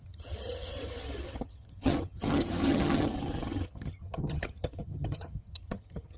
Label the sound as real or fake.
fake